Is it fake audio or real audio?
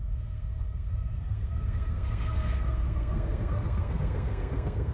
fake